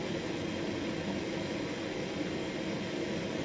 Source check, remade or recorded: recorded